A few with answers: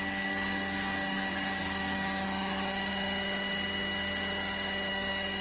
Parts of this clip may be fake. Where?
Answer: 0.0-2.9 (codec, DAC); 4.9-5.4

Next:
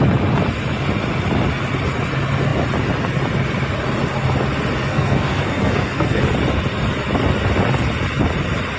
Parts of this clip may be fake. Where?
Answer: 4.9-6.2 (codec, SNAC)

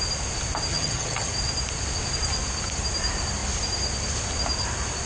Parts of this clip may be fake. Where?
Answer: 0.7-1.3 (vocoder, HiFi-GAN)